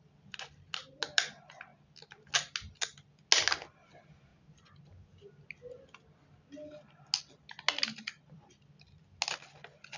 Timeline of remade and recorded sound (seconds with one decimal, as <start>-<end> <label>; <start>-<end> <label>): 0.0-10.0 recorded

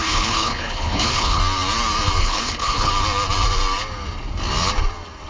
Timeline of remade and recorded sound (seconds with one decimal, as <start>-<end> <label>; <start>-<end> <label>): 0.0-1.4 remade; 1.4-2.2 recorded; 2.2-2.9 remade; 2.9-5.3 recorded

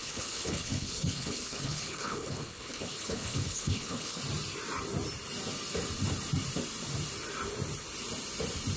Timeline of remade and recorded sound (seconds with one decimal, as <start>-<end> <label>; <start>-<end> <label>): 0.0-4.2 remade; 4.2-8.8 recorded

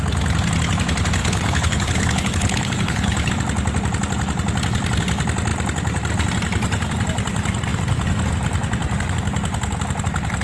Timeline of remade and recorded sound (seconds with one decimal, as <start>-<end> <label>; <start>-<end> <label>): 0.0-1.2 recorded; 1.2-3.3 remade; 3.3-10.4 recorded